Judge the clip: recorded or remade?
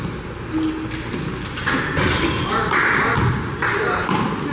recorded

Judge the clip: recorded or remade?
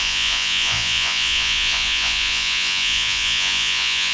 remade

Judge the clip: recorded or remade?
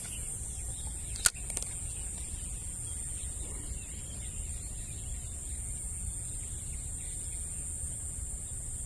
recorded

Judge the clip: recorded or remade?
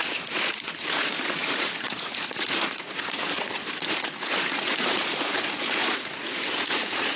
remade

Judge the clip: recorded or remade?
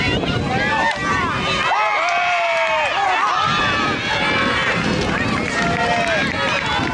recorded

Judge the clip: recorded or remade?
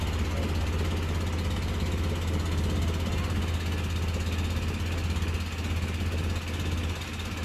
recorded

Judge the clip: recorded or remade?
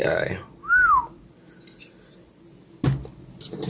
recorded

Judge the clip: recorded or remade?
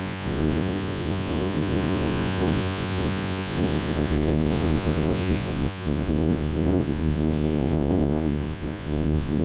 remade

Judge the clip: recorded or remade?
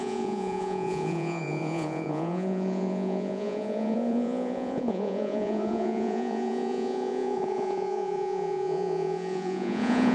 remade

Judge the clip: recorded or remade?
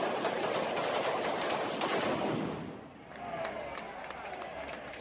recorded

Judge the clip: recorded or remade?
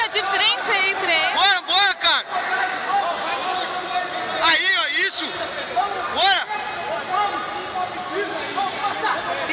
recorded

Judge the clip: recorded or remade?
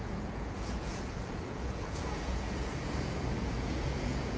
remade